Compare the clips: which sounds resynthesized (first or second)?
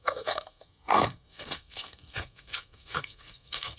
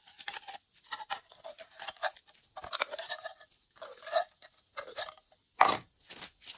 first